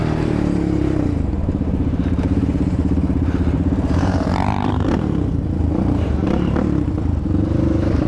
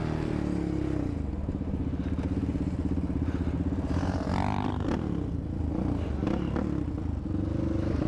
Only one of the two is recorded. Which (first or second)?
second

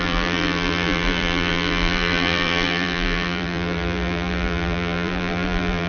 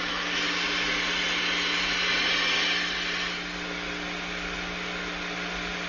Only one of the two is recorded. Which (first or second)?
second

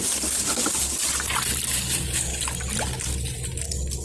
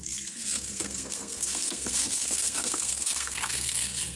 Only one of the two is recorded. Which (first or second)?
first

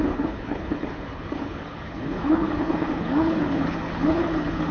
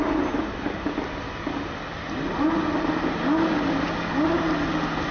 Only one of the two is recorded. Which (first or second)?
second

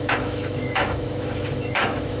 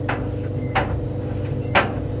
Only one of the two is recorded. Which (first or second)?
second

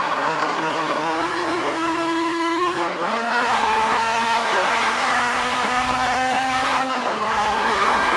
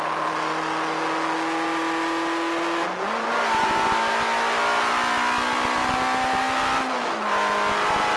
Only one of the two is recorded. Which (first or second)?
second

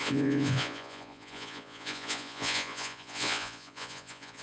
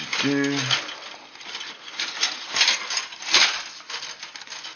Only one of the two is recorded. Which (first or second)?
second